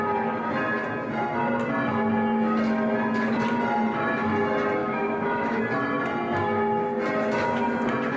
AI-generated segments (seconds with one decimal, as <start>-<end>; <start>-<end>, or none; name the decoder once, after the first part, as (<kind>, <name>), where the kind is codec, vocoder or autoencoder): 4.8-5.6 (autoencoder, DAC-VAE)

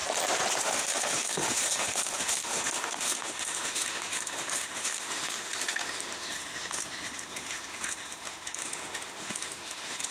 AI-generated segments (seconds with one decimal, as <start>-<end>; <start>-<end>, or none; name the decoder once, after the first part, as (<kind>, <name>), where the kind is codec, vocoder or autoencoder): 0.6-10.1 (autoencoder, DAC-VAE)

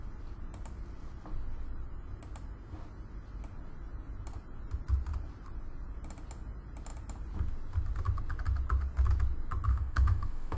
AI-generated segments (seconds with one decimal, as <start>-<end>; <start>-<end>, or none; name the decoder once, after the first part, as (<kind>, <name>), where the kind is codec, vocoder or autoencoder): 9.7-10.6 (autoencoder, DAC-VAE)

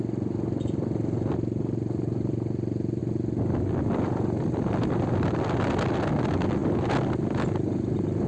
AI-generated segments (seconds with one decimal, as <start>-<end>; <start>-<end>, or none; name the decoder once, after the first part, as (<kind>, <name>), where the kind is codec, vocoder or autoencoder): none

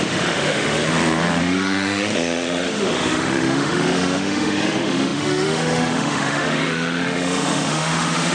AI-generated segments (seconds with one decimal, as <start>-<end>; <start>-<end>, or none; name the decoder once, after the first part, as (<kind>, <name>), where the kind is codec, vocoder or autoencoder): 0.0-0.8 (autoencoder, DAC-VAE); 1.4-8.3

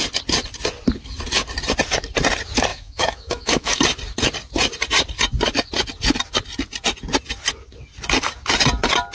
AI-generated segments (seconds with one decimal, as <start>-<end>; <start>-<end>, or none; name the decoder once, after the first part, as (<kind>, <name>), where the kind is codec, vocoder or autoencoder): 2.7-3.8 (autoencoder, DAC-VAE)

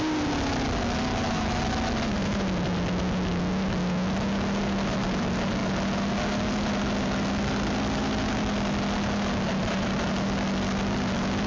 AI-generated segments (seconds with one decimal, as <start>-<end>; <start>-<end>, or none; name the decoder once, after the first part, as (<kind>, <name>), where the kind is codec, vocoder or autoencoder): 1.1-1.6 (autoencoder, DAC-VAE)